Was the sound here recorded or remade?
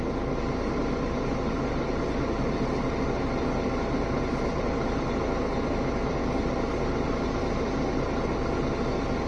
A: recorded